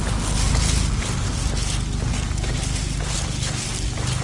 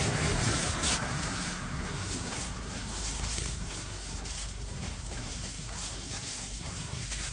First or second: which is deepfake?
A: second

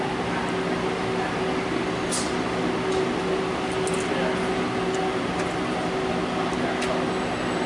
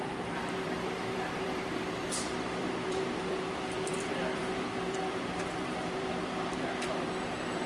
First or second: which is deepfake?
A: second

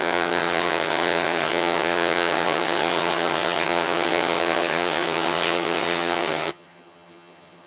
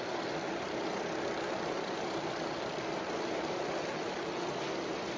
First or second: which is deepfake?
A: first